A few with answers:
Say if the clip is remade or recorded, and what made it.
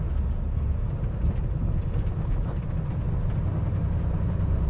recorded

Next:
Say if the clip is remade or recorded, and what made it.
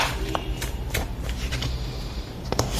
remade, vocoder, BigVGAN v2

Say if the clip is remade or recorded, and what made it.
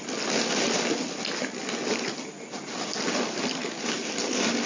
recorded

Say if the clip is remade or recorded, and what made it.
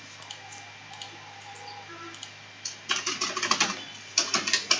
recorded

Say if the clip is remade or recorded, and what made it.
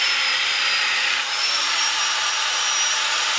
remade, vocoder, BigVGAN v2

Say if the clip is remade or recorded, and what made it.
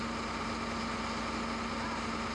recorded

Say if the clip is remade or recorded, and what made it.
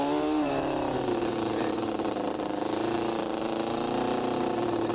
remade, vocoder, BigVGAN v2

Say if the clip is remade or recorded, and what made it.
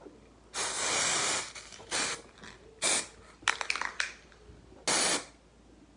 recorded